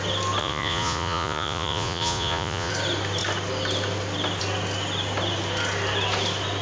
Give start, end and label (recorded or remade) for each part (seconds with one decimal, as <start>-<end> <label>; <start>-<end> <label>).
0.0-0.4 recorded; 0.4-2.7 remade; 2.7-6.6 recorded